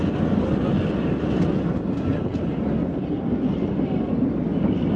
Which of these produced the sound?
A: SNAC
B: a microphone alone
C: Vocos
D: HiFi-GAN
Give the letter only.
B